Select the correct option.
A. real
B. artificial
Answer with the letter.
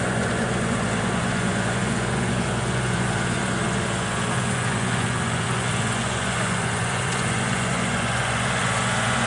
B